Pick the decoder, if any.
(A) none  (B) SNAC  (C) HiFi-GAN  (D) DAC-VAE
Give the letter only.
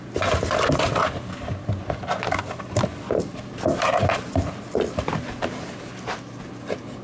A